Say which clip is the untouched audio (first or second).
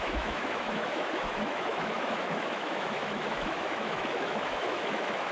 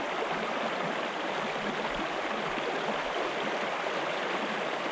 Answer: second